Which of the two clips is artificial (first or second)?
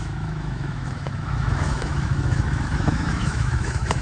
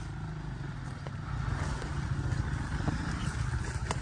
first